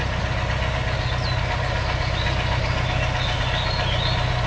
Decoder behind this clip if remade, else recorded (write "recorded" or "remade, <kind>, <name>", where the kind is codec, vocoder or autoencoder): recorded